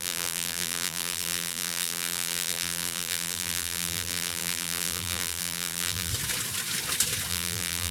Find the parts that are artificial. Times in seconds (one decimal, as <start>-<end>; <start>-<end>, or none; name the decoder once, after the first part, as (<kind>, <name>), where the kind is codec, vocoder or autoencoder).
0.0-6.1 (vocoder, BigVGAN v2); 7.3-7.9